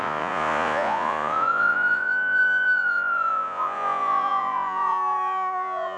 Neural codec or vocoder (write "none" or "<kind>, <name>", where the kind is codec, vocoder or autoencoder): vocoder, Vocos